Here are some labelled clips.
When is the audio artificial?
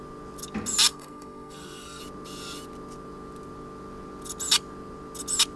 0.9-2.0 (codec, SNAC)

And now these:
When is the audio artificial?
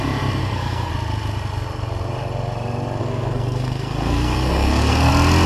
0.4-0.9 (codec, SNAC); 3.0-5.1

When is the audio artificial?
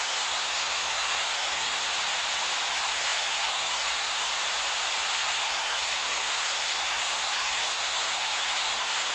0.0-1.9 (codec, SNAC); 2.7-4.3; 5.1-9.1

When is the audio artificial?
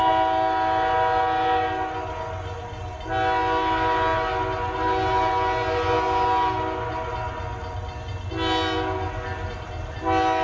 none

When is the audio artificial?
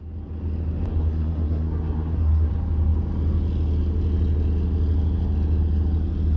0.9-2.5 (codec, SNAC)